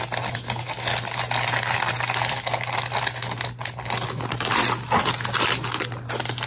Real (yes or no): yes